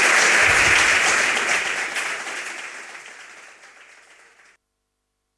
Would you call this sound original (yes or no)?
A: yes